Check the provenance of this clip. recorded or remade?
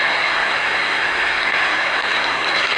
remade